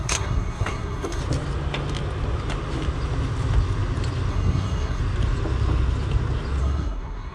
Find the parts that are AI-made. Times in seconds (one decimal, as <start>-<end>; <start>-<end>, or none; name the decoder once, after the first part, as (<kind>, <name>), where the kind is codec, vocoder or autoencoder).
0.0-1.2 (codec, SNAC); 4.3-5.0; 6.6-7.3

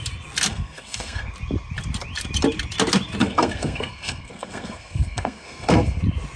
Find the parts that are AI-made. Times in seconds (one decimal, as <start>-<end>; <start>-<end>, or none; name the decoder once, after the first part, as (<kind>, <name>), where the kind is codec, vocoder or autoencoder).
0.5-1.3 (codec, SNAC); 3.2-6.0